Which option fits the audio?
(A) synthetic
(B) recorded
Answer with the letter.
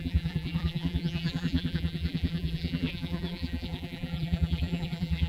A